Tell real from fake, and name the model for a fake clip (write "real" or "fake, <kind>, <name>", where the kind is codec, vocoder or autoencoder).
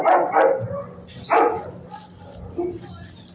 real